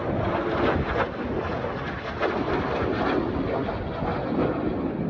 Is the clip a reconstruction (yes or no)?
no